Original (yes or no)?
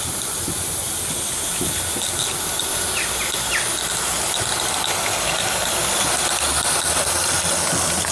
yes